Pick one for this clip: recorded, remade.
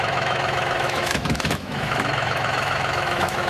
remade